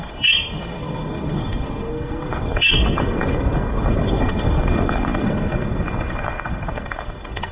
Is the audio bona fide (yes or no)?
no